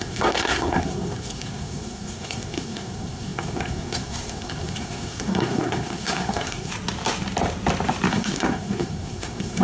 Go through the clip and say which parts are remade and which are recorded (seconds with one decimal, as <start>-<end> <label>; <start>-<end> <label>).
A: 0.0-6.7 remade; 6.7-8.1 recorded; 8.1-9.6 remade